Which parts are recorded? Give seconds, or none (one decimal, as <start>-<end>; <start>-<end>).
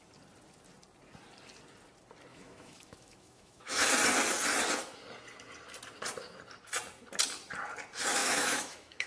0.0-2.3; 3.9-8.2